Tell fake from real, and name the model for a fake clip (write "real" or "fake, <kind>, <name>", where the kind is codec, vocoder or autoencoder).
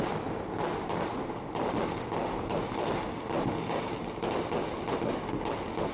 real